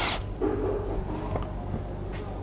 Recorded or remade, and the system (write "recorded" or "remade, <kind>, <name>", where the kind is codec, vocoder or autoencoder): recorded